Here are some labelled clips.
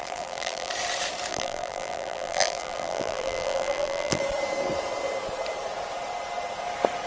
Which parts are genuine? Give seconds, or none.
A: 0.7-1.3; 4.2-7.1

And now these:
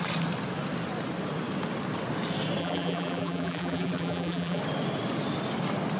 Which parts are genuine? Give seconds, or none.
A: 0.0-2.6; 4.6-6.0

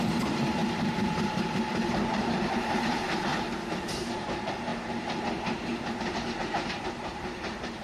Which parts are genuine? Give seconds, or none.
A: 0.6-1.4; 3.3-3.8; 4.7-5.2; 5.7-6.4

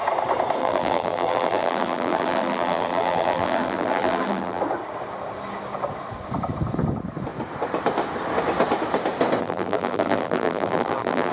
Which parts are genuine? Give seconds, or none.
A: 0.0-0.6; 4.6-9.4

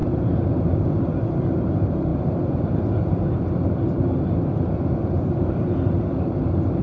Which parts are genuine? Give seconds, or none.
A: 2.1-6.2

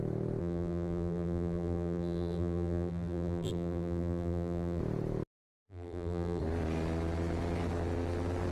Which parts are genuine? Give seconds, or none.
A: 0.0-0.4; 4.8-5.6; 6.4-8.5

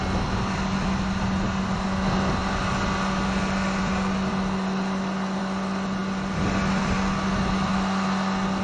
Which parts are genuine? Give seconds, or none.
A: 0.0-8.6